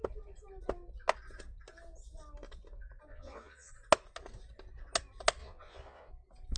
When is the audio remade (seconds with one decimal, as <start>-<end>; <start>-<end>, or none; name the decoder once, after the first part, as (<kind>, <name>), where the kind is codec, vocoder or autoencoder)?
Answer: 3.1-3.7 (vocoder, Vocos); 5.4-6.1